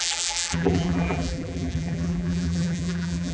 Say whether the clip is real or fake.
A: fake